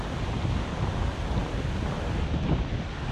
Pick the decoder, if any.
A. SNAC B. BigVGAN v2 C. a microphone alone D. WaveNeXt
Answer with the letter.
C